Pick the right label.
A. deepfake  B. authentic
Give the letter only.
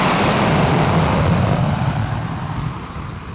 A